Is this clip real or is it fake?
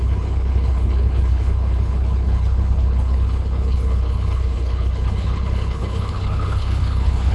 fake